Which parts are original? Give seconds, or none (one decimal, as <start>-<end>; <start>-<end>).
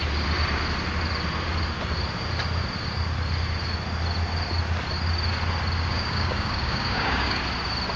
0.0-5.9; 7.4-8.0